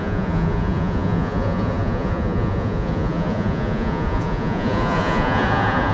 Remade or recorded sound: remade